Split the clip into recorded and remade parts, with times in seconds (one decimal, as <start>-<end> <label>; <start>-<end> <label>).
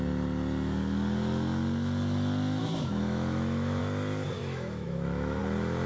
0.0-2.6 recorded; 2.6-3.8 remade; 3.8-4.4 recorded; 4.4-5.4 remade; 5.4-5.9 recorded